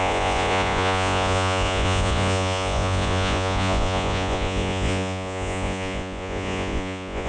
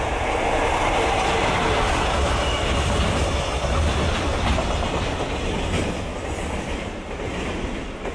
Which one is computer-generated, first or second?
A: first